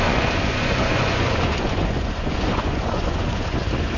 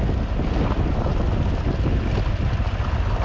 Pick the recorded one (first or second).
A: second